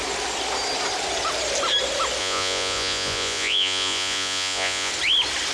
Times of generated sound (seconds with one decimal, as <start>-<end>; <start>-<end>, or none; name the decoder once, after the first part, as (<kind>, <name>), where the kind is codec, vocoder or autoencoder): 2.2-4.9 (vocoder, Vocos)